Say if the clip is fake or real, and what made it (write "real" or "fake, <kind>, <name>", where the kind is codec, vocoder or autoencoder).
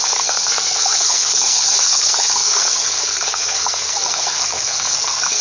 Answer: fake, codec, SNAC